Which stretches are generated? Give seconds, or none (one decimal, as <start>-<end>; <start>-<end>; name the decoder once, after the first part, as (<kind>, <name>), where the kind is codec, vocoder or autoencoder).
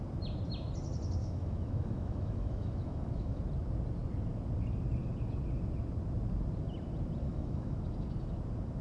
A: 1.2-3.4 (autoencoder, DAC-VAE); 7.2-7.8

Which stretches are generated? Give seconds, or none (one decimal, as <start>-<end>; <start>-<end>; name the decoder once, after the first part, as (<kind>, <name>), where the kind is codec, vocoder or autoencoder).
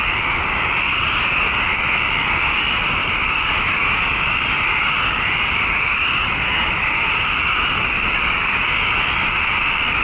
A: 0.9-1.6 (vocoder, BigVGAN v2); 3.0-7.7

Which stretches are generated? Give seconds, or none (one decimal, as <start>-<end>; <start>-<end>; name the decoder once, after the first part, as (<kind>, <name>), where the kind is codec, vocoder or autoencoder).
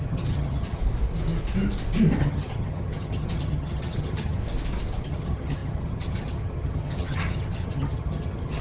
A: 0.0-0.8 (vocoder, HiFi-GAN); 2.2-4.4; 5.0-8.6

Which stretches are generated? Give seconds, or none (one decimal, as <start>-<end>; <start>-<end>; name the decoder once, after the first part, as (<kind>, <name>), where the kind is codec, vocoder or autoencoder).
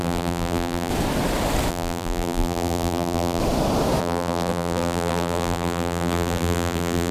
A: 0.0-0.9 (vocoder, BigVGAN v2); 1.7-3.4; 4.0-7.1